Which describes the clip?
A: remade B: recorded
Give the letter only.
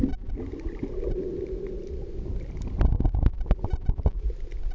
B